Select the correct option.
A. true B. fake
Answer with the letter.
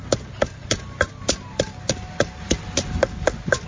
A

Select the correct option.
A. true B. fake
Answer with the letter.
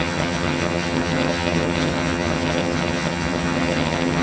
B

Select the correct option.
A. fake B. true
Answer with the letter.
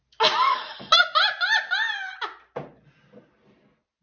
B